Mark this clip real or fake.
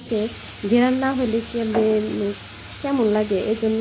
real